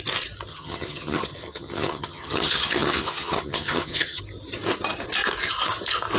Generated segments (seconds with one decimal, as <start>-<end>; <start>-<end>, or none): 0.5-4.2